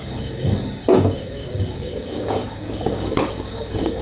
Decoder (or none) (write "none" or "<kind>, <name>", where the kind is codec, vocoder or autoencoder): codec, DAC